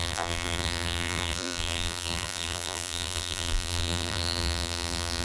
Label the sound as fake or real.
fake